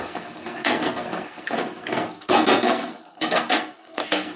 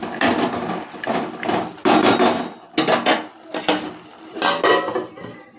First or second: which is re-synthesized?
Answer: first